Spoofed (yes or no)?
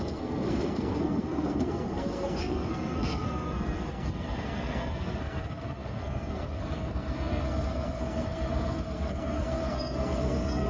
yes